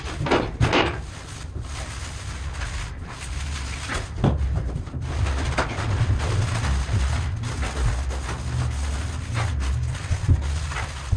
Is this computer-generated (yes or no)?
no